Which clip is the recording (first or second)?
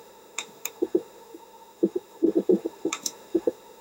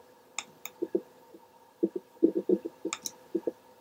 second